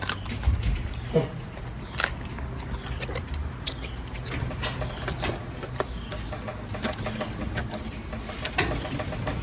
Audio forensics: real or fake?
real